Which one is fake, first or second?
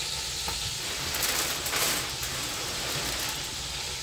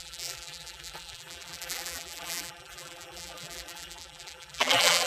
second